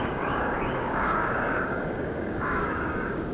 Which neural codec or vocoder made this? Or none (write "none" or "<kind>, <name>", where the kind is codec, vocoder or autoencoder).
codec, DAC